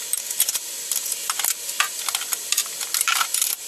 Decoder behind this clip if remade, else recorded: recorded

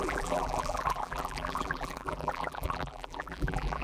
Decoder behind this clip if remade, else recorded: remade, vocoder, BigVGAN v2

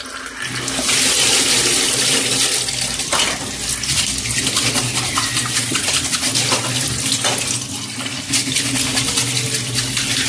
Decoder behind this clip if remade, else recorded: recorded